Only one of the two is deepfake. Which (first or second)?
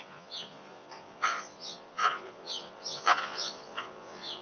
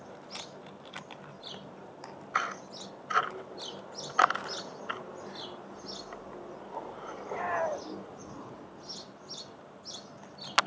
first